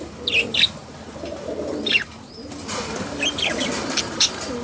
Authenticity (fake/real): real